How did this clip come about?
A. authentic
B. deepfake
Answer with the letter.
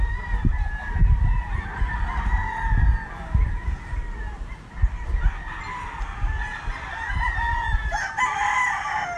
A